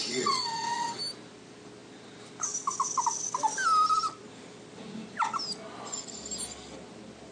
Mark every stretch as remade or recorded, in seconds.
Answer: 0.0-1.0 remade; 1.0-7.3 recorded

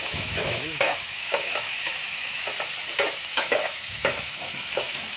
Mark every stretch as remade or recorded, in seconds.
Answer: 0.0-2.5 remade; 2.5-3.2 recorded; 3.2-5.2 remade

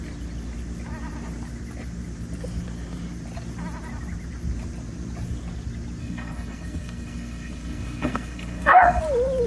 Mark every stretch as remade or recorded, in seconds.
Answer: 0.0-6.0 recorded; 6.0-9.0 remade; 9.0-9.5 recorded

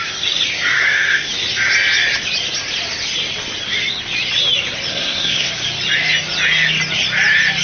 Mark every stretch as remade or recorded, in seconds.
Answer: 0.0-0.7 recorded; 0.7-1.3 remade; 1.3-4.9 recorded; 4.9-5.5 remade; 5.5-7.6 recorded

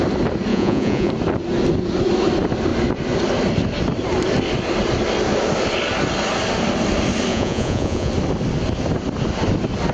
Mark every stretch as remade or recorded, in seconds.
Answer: 0.0-0.5 recorded; 0.5-1.1 remade; 1.1-7.3 recorded; 7.3-8.1 remade; 8.1-9.9 recorded

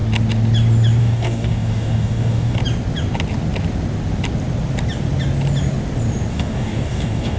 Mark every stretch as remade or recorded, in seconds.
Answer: 0.0-1.0 recorded; 1.0-2.6 remade; 2.6-6.3 recorded; 6.3-7.4 remade

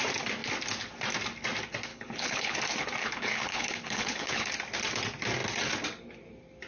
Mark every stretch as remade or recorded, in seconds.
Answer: 0.0-1.9 recorded; 1.9-2.6 remade; 2.6-3.0 recorded; 3.0-4.5 remade; 4.5-6.7 recorded

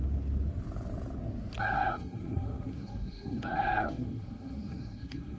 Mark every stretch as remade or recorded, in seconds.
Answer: 0.0-1.6 recorded; 1.6-5.4 remade